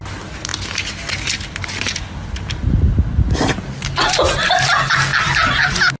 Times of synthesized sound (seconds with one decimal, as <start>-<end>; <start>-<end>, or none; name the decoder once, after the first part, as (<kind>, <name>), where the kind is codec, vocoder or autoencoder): none